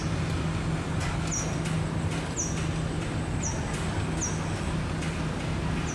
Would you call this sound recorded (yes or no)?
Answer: yes